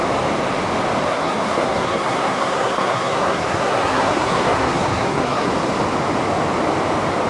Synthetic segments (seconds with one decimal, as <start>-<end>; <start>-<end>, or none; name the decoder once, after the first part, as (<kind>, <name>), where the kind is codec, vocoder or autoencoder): 1.1-5.5 (codec, SNAC)